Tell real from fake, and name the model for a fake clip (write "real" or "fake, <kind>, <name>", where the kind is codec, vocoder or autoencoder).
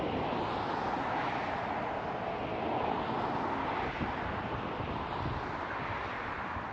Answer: real